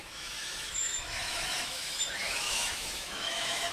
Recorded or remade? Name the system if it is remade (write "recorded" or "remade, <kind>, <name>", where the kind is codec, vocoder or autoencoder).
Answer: remade, autoencoder, DAC-VAE